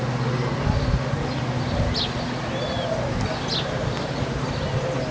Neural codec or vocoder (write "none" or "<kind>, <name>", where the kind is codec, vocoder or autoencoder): none